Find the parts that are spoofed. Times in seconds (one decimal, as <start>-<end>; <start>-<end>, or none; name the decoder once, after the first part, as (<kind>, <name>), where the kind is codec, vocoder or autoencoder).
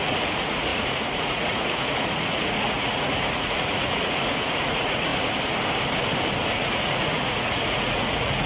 0.0-5.1 (vocoder, Vocos); 6.5-8.5